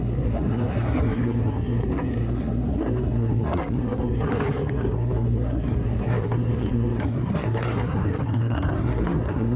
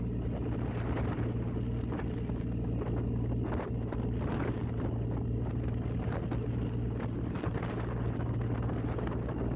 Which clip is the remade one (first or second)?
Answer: first